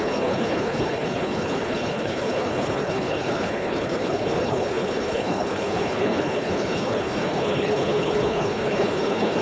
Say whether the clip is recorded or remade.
remade